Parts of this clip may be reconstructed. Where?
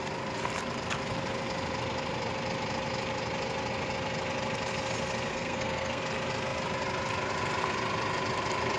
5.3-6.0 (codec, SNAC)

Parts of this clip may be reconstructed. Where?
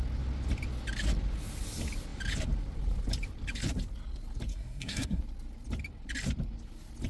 4.5-5.2 (codec, SNAC)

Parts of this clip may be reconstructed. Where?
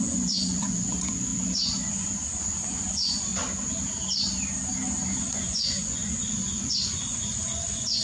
0.0-3.3 (vocoder, Vocos); 5.3-8.0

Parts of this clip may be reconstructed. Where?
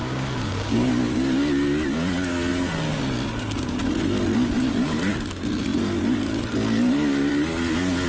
0.0-0.9 (codec, DAC)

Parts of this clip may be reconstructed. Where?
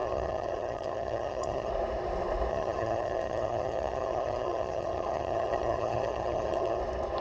0.0-1.7 (vocoder, HiFi-GAN); 2.5-6.8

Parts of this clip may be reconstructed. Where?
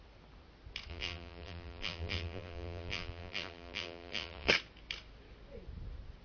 0.9-4.5 (vocoder, BigVGAN v2)